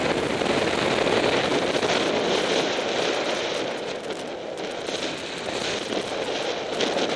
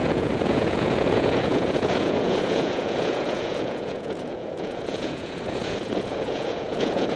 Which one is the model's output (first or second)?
second